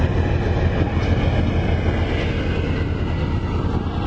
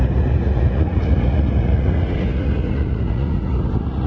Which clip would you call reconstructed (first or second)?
second